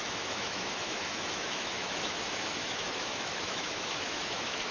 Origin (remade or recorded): remade